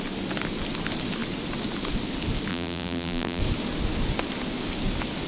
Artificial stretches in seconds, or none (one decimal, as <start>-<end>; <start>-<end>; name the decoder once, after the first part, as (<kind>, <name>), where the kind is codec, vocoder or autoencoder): 2.5-3.4 (vocoder, BigVGAN v2)